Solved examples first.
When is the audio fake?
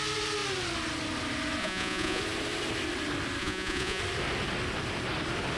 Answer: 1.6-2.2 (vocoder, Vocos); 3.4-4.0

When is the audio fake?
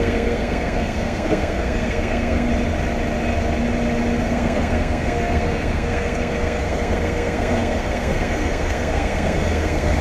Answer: 0.0-2.5 (codec, SNAC); 4.2-10.0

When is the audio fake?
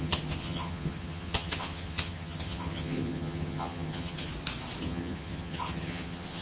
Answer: 0.0-4.3 (vocoder, HiFi-GAN); 4.8-6.4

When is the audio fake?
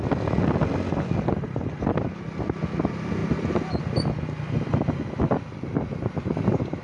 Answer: none